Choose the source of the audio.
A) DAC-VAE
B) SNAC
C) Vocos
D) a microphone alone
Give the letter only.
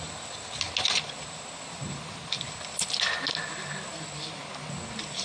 D